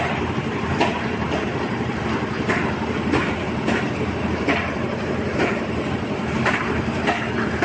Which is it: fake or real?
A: fake